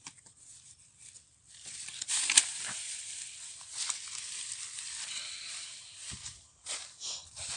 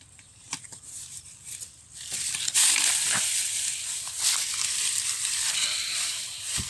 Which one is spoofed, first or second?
second